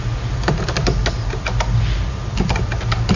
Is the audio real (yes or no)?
yes